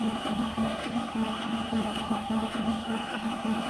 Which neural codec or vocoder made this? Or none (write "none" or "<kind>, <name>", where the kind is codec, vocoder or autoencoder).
codec, SNAC